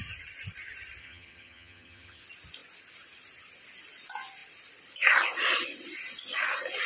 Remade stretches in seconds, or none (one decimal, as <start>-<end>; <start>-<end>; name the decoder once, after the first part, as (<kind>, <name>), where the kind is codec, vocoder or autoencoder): 1.0-2.2 (vocoder, HiFi-GAN)